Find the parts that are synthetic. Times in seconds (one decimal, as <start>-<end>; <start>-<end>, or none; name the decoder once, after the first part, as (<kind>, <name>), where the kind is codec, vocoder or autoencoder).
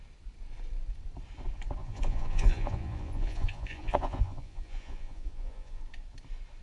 1.8-5.8 (vocoder, Vocos)